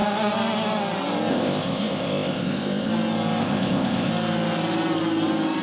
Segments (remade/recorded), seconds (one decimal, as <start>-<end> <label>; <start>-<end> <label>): 0.0-1.3 recorded; 1.3-2.9 remade; 2.9-3.4 recorded; 3.4-4.1 remade; 4.1-5.6 recorded